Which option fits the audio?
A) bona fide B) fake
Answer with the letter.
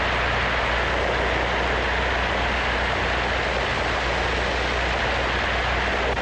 A